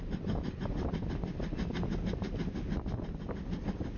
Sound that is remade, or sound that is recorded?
recorded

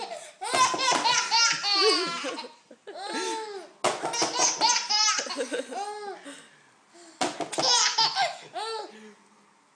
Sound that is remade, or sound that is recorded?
recorded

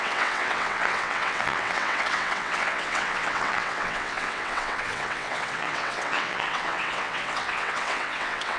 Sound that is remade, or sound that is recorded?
remade